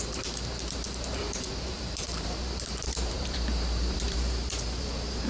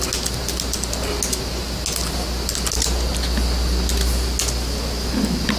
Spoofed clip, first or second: first